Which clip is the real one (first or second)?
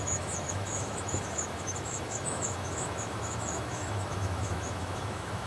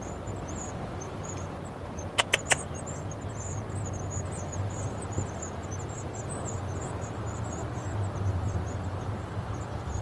second